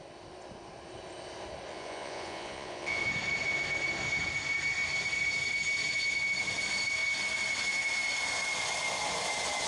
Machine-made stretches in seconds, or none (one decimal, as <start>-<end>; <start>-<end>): 1.7-3.0